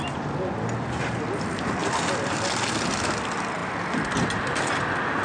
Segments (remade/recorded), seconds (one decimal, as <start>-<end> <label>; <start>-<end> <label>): 0.0-5.2 recorded